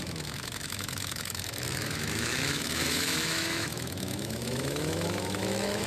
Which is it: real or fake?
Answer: fake